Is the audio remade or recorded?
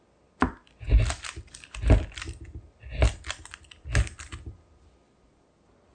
recorded